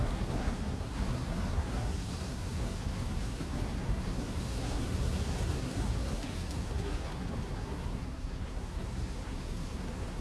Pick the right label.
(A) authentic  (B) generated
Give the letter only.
B